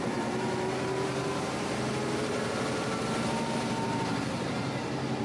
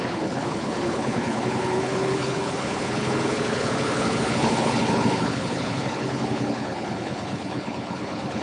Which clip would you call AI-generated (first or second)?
second